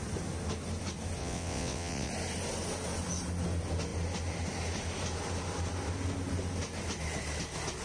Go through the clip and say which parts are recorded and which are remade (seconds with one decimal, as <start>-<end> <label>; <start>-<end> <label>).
0.0-1.2 recorded; 1.2-2.1 remade; 2.1-7.8 recorded

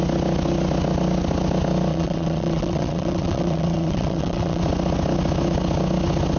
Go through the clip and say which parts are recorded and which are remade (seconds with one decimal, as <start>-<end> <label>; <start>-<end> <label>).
0.0-1.9 recorded; 1.9-4.6 remade; 4.6-6.4 recorded

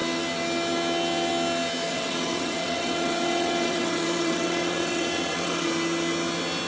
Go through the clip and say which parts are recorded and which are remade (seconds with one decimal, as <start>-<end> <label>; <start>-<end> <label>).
0.0-1.9 recorded; 1.9-5.7 remade; 5.7-6.7 recorded